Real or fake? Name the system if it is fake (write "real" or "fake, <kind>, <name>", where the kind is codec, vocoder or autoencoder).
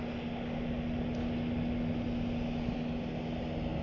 real